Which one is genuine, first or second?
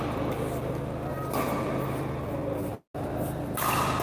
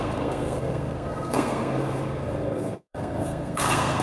first